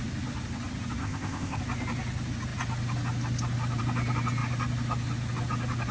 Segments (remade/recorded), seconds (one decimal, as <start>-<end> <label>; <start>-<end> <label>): 0.0-1.0 recorded; 1.0-1.6 remade; 1.6-5.9 recorded